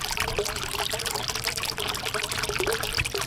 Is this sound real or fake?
real